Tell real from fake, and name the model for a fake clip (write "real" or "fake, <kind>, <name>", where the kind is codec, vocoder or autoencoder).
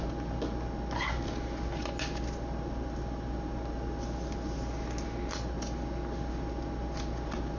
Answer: real